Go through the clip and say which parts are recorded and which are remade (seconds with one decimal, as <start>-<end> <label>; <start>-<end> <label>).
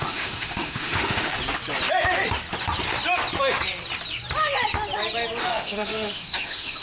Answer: 0.0-1.3 remade; 1.3-5.4 recorded; 5.4-6.8 remade